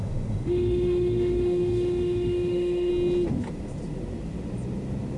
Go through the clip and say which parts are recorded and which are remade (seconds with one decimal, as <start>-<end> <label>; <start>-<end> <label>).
0.0-2.9 remade; 2.9-5.2 recorded